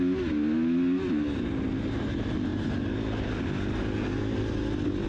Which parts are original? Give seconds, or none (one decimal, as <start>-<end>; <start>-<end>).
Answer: 0.0-5.1